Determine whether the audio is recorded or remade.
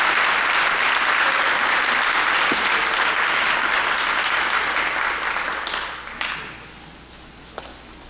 recorded